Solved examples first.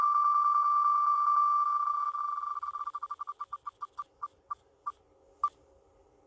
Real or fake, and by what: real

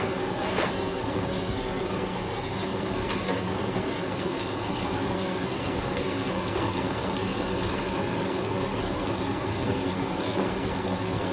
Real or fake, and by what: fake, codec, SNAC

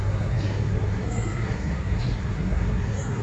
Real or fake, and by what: fake, codec, SNAC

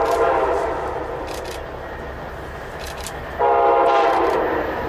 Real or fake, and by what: real